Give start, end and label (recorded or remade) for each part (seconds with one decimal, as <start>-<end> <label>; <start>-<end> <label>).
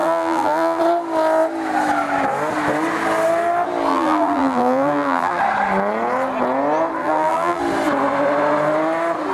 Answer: 0.0-0.8 remade; 0.8-3.9 recorded; 3.9-5.4 remade; 5.4-7.0 recorded; 7.0-7.6 remade; 7.6-9.3 recorded